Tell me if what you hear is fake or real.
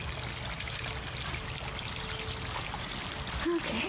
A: real